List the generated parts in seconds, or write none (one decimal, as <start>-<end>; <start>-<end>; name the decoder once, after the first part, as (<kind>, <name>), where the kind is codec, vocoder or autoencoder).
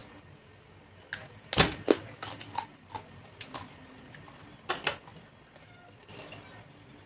none